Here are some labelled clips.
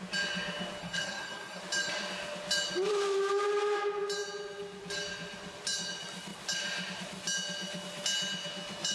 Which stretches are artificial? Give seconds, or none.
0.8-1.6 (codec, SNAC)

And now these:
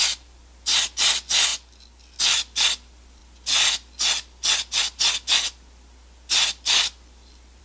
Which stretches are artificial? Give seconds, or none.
none

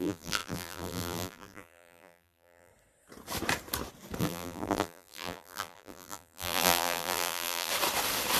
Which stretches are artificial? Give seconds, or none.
0.0-2.7 (vocoder, BigVGAN v2); 4.2-7.7

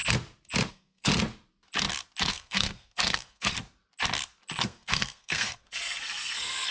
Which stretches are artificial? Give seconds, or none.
0.7-1.1 (codec, SNAC); 2.3-3.5; 4.6-6.7